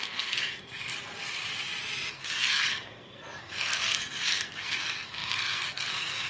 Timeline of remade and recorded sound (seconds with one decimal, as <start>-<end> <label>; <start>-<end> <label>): 0.0-0.9 remade; 0.9-2.1 recorded; 2.1-6.3 remade